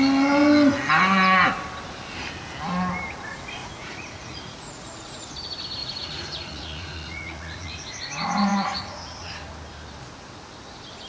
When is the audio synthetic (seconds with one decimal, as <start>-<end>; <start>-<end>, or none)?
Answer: 3.6-5.3; 5.8-7.9; 8.5-9.3